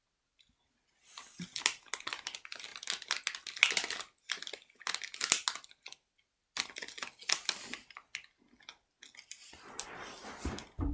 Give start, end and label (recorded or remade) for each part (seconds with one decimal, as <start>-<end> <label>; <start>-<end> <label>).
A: 0.0-10.9 recorded